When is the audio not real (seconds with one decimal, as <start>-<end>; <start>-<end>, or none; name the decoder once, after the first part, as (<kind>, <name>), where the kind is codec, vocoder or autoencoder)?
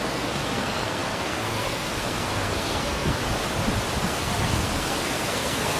0.0-3.2 (codec, SNAC); 4.0-5.8